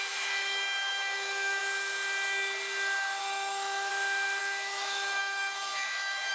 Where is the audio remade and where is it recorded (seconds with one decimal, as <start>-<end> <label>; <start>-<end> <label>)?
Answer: 0.0-1.6 remade; 1.6-3.2 recorded; 3.2-3.9 remade; 3.9-4.4 recorded; 4.4-6.3 remade